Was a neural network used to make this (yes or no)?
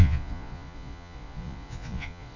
yes